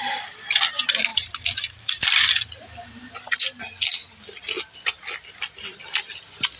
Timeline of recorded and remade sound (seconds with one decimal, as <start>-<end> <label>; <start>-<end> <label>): 0.0-1.1 recorded; 1.1-2.3 remade; 2.3-6.6 recorded